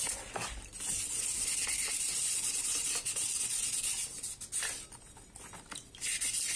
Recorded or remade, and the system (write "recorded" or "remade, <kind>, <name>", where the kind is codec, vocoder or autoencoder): recorded